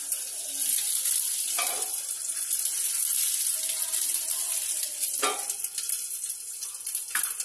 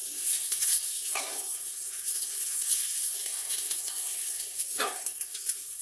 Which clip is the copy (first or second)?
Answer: second